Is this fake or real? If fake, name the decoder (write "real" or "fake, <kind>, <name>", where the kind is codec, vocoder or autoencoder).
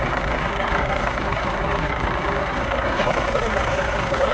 fake, codec, SNAC